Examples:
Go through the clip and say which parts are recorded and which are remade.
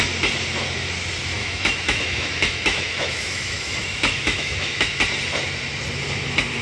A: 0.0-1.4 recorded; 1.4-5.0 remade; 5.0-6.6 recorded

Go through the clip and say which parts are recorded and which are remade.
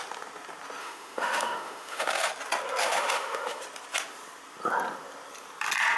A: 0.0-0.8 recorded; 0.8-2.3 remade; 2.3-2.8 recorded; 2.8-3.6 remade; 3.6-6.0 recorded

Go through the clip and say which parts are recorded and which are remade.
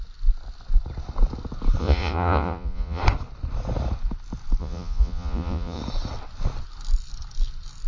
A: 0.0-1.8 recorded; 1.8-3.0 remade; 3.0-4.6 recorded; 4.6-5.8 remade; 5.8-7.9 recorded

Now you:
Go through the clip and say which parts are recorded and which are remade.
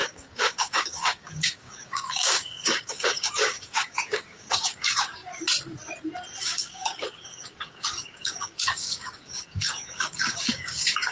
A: 0.0-5.2 remade; 5.2-6.4 recorded; 6.4-11.1 remade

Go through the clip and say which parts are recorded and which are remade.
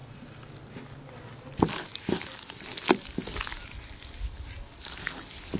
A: 0.0-5.6 recorded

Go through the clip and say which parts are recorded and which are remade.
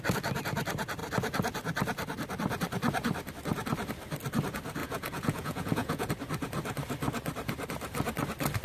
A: 0.0-4.8 recorded; 4.8-6.1 remade; 6.1-8.6 recorded